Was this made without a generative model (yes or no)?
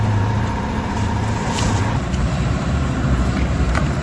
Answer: no